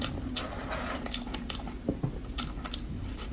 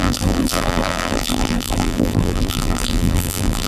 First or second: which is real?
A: first